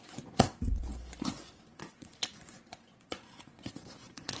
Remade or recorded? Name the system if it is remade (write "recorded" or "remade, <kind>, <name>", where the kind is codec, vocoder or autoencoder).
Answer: remade, vocoder, Vocos